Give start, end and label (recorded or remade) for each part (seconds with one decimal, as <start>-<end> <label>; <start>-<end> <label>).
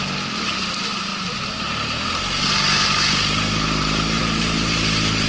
0.0-1.1 remade; 1.1-3.8 recorded; 3.8-5.3 remade